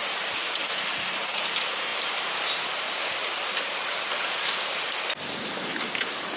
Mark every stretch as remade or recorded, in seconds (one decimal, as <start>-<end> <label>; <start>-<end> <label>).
0.0-0.6 recorded; 0.6-1.9 remade; 1.9-5.7 recorded; 5.7-6.4 remade